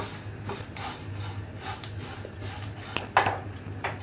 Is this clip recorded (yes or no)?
yes